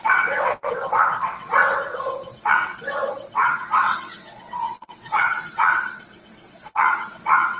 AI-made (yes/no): yes